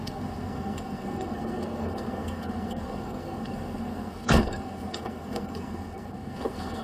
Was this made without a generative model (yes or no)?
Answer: no